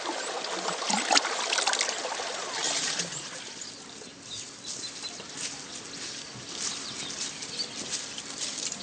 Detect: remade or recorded recorded